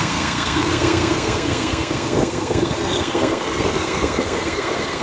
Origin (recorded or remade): remade